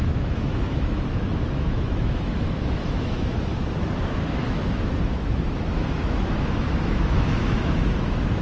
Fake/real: fake